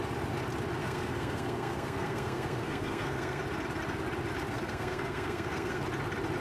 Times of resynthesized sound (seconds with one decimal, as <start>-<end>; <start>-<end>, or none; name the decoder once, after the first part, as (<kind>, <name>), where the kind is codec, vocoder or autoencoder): 0.8-3.4 (codec, SNAC); 4.5-5.8